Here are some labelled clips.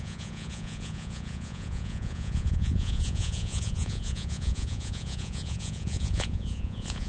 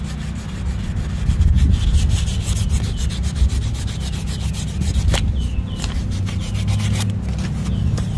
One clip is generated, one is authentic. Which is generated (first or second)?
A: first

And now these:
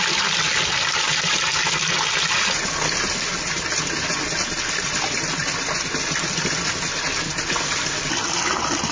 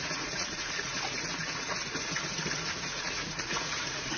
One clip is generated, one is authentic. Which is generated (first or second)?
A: second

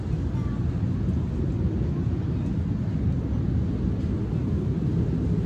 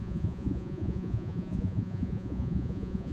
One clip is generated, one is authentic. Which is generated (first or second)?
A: second